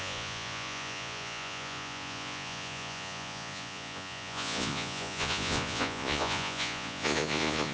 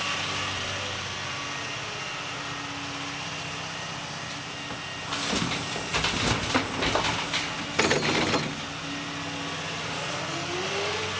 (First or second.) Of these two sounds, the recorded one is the second